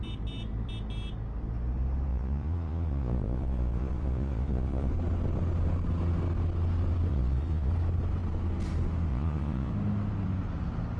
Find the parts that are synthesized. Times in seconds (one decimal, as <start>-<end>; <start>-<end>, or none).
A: 2.1-4.9; 7.1-7.7; 9.1-9.7